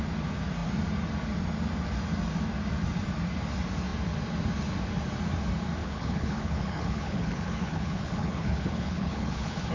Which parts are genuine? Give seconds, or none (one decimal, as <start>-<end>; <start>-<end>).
0.0-5.8